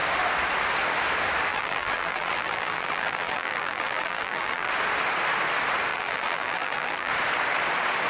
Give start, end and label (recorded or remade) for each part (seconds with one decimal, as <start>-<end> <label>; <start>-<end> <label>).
0.0-1.5 recorded; 1.5-4.7 remade; 4.7-5.9 recorded; 5.9-7.1 remade; 7.1-8.1 recorded